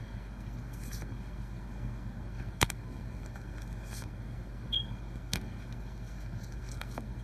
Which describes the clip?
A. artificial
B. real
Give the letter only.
A